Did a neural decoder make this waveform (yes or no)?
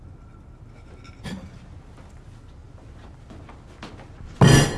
no